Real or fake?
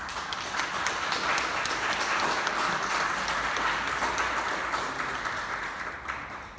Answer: real